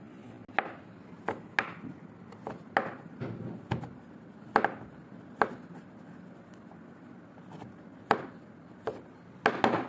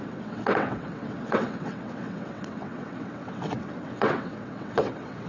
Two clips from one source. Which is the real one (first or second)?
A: first